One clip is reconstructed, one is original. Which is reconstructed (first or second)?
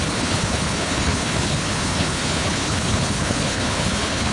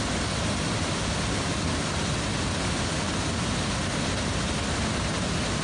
first